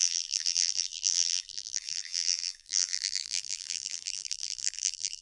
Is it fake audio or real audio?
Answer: fake